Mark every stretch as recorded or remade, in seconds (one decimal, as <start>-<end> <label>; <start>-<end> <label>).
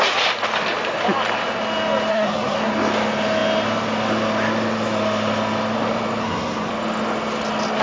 0.0-2.1 recorded; 2.1-2.7 remade; 2.7-6.2 recorded; 6.2-6.7 remade; 6.7-7.8 recorded